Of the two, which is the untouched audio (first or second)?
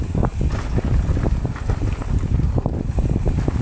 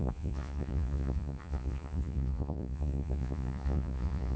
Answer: first